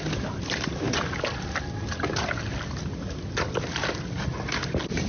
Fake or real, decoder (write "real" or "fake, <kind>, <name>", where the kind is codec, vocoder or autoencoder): real